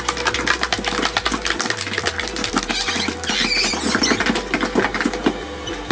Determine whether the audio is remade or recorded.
recorded